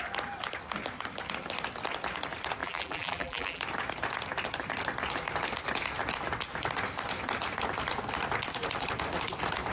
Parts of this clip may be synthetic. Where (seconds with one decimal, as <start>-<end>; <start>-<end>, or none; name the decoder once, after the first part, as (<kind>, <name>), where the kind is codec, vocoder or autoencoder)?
2.6-3.6 (vocoder, BigVGAN v2)